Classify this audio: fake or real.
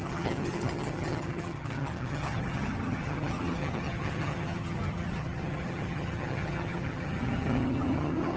fake